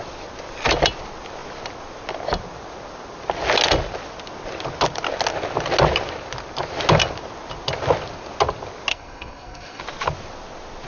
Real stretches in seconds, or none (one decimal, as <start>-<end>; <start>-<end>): 0.0-8.9; 9.8-10.9